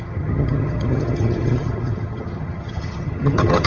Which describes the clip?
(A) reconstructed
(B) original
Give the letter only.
A